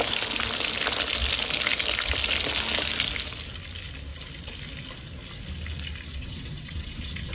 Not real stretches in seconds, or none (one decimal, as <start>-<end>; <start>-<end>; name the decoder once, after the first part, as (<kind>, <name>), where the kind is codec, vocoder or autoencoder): 6.1-7.3 (vocoder, WaveNeXt)